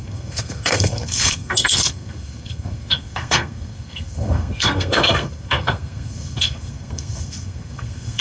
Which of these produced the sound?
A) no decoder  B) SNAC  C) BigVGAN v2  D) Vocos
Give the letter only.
B